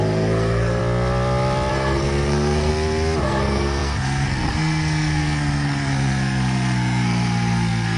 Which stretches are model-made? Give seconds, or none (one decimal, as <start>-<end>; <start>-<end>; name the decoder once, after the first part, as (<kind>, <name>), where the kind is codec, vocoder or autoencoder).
0.0-0.8 (codec, SNAC); 1.7-2.7; 3.2-8.0